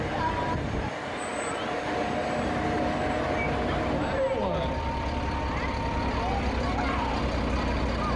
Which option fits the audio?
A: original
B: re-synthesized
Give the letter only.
A